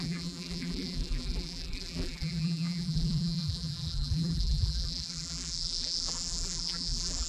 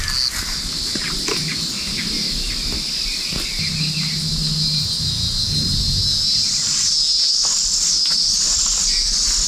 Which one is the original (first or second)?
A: second